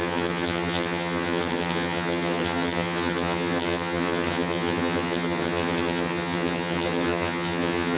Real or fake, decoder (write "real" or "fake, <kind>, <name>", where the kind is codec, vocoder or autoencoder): fake, vocoder, HiFi-GAN